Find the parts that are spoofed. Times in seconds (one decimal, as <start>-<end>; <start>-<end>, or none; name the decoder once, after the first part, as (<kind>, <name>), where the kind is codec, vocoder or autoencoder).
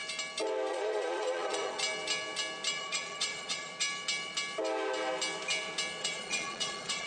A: 0.7-1.8 (vocoder, Vocos); 2.7-3.7; 6.0-7.1